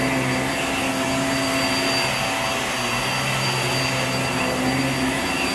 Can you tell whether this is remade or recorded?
recorded